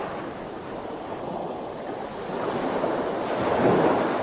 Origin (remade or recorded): recorded